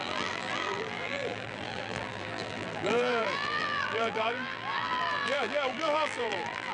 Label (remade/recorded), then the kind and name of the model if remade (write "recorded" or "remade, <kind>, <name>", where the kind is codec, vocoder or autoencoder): remade, vocoder, BigVGAN v2